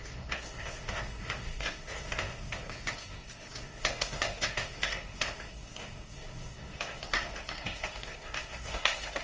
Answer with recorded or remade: remade